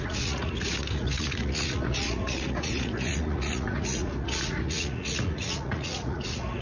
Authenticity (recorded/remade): remade